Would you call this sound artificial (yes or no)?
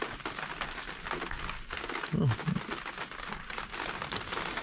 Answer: no